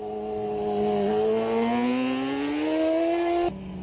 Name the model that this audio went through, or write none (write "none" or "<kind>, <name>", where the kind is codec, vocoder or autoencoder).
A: none